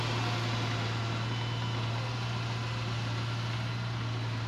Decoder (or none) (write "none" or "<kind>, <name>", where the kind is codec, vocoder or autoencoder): none